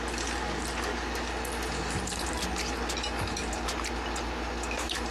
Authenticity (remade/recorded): recorded